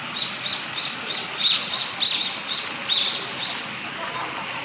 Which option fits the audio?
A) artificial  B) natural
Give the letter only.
B